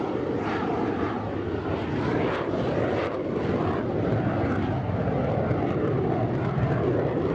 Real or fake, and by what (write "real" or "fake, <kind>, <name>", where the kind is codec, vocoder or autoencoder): real